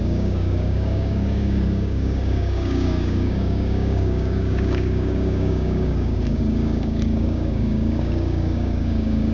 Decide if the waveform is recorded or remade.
remade